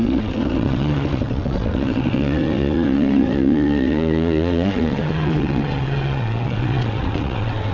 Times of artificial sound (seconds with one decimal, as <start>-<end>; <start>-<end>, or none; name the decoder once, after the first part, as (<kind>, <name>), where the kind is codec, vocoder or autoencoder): 0.0-7.7 (vocoder, WaveNeXt)